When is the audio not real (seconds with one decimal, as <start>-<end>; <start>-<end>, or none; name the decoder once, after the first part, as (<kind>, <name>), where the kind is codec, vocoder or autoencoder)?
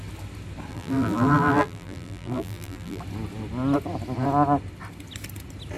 0.7-3.0 (vocoder, BigVGAN v2)